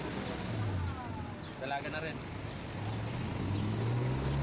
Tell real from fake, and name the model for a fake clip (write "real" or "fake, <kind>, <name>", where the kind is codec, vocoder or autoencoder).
real